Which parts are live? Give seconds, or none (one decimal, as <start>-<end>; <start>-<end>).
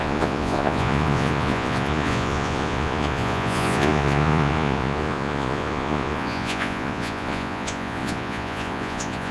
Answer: none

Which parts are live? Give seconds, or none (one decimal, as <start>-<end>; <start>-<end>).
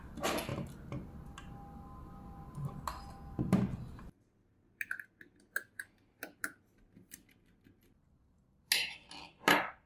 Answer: 0.0-9.9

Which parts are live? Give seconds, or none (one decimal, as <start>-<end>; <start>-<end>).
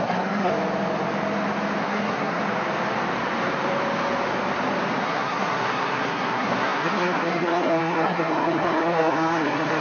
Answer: 0.5-1.8; 2.4-5.0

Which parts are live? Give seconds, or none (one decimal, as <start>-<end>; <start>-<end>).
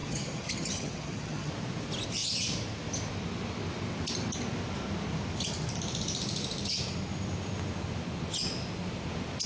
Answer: 1.5-9.5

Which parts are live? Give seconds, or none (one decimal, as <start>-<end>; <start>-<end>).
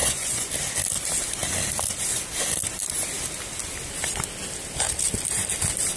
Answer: 0.5-6.0